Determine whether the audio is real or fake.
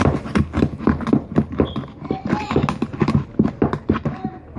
real